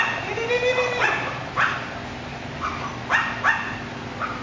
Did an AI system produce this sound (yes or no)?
no